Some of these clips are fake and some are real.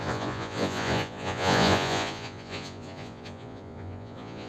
fake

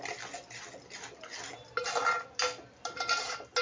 real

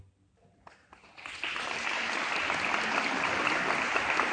real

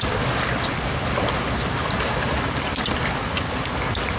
real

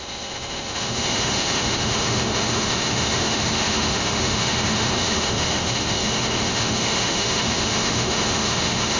fake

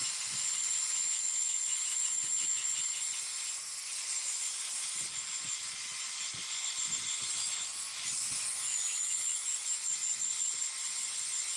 fake